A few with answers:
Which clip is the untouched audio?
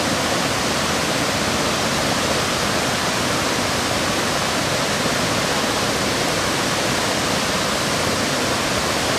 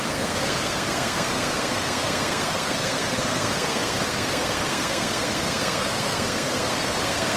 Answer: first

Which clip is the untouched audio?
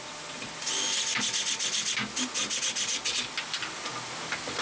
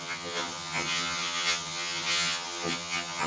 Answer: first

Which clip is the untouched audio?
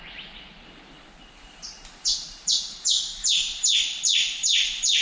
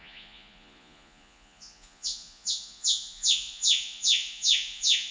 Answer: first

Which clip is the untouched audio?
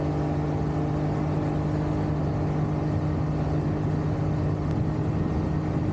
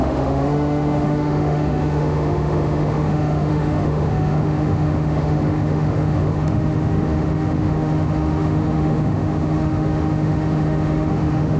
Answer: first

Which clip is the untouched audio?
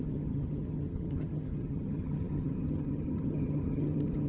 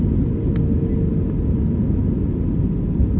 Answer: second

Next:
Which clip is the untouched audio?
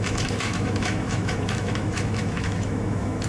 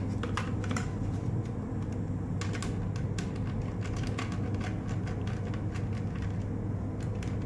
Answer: second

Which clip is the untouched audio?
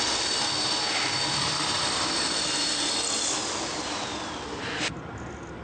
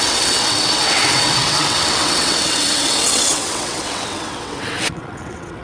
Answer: first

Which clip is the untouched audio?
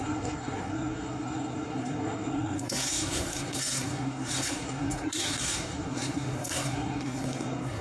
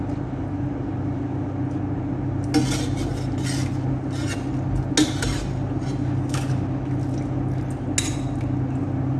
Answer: second